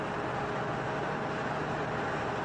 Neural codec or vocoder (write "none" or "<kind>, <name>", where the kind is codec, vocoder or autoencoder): none